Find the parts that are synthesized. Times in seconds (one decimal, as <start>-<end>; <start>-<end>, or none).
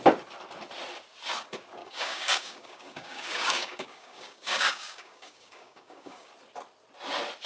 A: 1.8-6.3